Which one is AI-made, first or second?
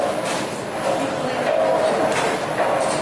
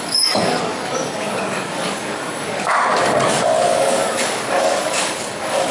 second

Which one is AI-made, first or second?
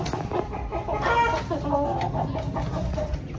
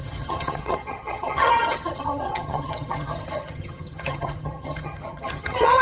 second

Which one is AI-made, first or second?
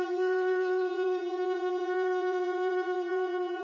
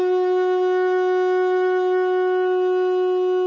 first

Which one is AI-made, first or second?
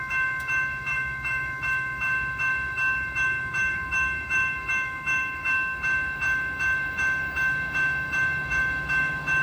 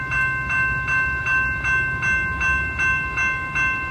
first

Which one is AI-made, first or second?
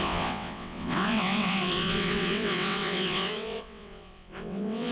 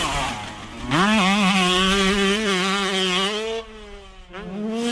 first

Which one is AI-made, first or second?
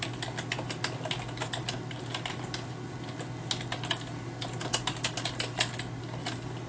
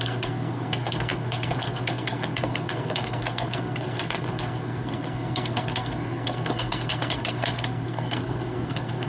second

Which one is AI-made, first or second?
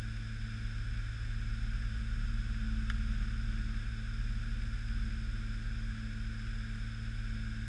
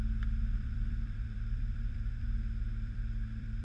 second